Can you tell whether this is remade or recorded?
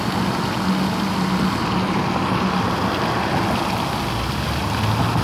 recorded